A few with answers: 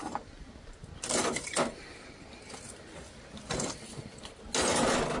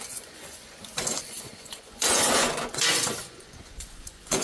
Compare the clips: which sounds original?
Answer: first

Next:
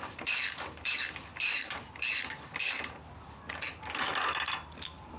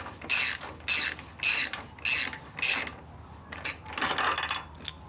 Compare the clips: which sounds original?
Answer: second